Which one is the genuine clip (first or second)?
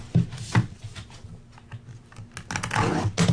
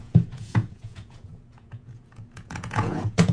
first